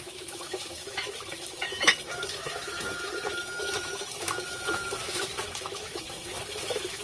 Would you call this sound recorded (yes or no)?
no